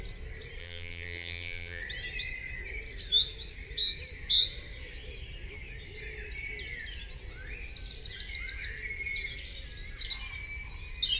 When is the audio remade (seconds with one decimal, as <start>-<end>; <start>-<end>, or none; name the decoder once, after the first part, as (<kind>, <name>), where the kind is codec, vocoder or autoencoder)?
0.6-1.8 (vocoder, BigVGAN v2)